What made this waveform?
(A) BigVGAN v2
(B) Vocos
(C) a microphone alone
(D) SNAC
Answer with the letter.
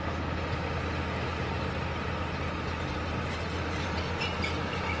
C